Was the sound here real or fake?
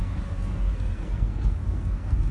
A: fake